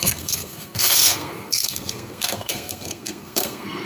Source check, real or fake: fake